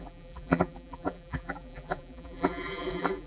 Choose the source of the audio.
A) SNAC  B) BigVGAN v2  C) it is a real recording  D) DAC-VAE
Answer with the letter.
B